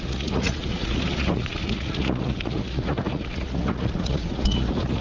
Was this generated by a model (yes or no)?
yes